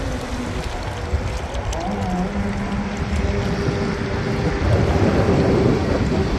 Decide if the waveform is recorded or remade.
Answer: recorded